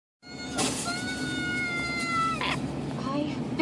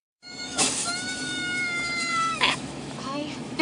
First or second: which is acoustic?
first